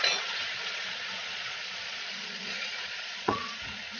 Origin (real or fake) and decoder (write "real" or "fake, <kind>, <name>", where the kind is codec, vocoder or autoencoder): fake, vocoder, Vocos